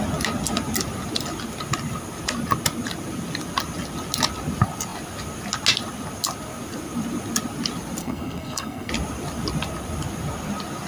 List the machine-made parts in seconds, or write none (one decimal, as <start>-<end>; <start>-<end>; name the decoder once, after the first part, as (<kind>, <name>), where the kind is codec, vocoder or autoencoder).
8.0-8.9 (codec, SNAC)